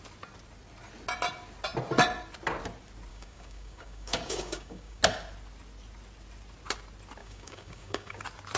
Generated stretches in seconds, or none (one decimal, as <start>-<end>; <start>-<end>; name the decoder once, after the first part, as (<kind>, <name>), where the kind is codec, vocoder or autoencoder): 3.1-5.0 (codec, DAC); 7.2-8.2